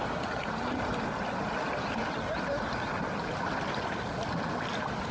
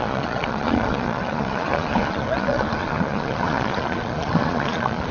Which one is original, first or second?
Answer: first